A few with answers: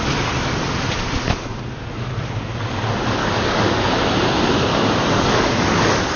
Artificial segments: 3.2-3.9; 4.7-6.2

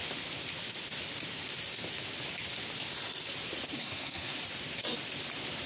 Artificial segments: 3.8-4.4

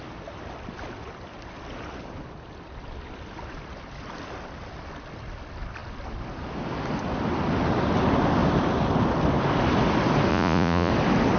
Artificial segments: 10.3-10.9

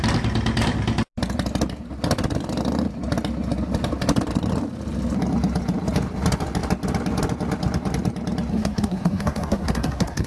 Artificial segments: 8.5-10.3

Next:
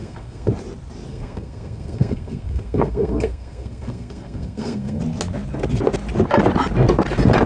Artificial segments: 0.0-0.5; 1.1-5.0

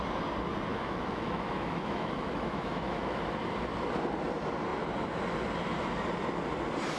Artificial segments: 0.7-3.2